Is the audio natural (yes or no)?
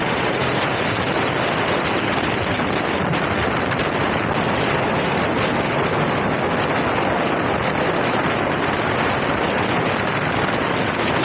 yes